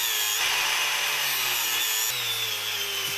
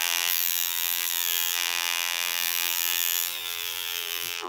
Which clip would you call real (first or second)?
first